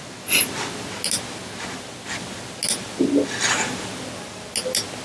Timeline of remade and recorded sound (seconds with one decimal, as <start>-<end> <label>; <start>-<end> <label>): 0.0-5.0 recorded